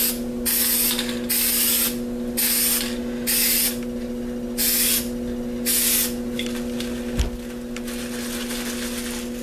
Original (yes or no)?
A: yes